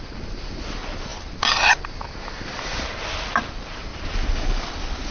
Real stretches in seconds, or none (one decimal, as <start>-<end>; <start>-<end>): 0.0-5.1